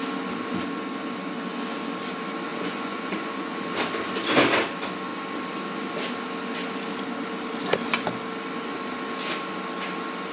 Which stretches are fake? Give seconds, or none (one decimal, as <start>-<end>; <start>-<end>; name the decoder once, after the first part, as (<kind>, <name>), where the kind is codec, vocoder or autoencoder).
2.5-3.6 (vocoder, Vocos)